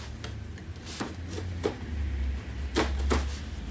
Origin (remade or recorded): recorded